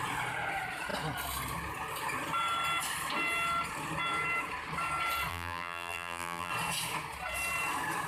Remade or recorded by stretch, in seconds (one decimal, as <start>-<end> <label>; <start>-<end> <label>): 0.0-5.3 recorded; 5.3-6.5 remade; 6.5-8.1 recorded